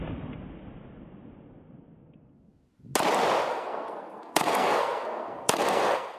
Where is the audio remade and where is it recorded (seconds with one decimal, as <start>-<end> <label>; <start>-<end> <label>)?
0.0-3.5 recorded; 3.5-6.2 remade